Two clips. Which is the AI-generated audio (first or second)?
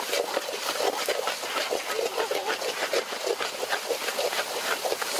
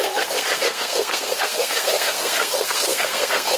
second